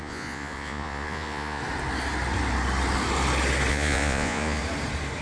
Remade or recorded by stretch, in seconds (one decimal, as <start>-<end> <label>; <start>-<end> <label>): 0.0-1.6 remade; 1.6-3.7 recorded; 3.7-4.6 remade; 4.6-5.2 recorded